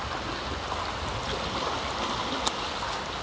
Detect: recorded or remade recorded